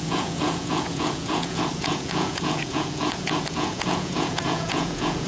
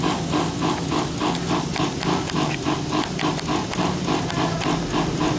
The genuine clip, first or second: second